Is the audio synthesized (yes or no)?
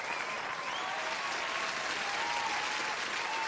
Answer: no